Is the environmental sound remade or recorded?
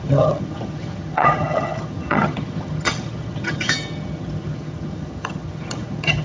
remade